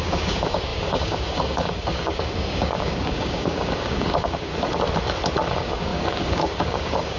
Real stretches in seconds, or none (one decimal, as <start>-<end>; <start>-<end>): 4.5-5.5